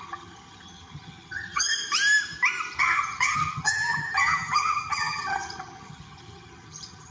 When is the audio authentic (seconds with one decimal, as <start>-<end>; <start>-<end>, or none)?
1.7-2.8